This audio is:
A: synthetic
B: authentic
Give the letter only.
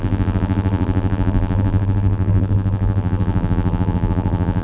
A